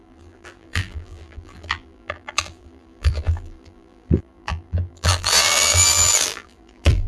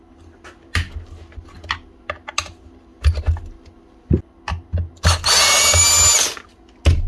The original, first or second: second